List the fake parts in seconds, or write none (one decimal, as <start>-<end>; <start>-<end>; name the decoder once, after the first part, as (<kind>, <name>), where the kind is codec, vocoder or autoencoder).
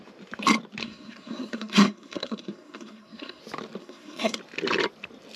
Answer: 0.8-3.4 (codec, SNAC); 3.8-4.4